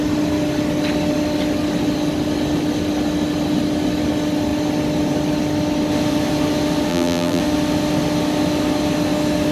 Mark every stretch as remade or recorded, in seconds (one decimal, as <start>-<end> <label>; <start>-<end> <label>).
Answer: 0.0-6.9 recorded; 6.9-7.4 remade; 7.4-9.5 recorded